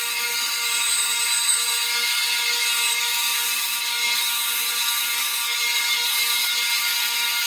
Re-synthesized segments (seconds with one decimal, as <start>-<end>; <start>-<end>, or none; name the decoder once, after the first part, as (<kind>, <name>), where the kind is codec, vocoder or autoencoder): 0.0-7.5 (codec, DAC)